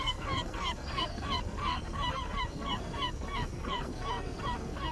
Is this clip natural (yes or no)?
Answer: no